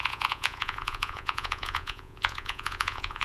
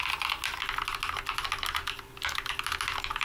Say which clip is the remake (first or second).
first